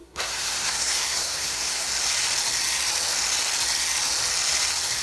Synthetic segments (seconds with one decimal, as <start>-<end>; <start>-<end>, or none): 0.0-1.9